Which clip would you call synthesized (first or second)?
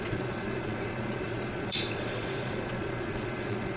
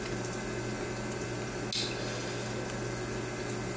first